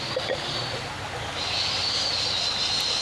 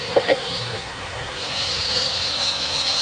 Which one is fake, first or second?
second